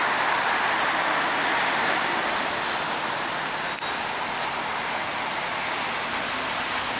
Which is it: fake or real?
real